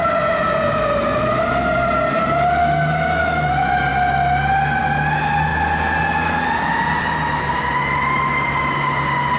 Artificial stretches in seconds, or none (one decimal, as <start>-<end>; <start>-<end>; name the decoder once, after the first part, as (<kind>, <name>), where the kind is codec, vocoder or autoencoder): 2.6-3.5 (autoencoder, DAC-VAE)